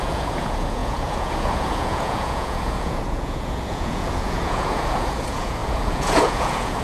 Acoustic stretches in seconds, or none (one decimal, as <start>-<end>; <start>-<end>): none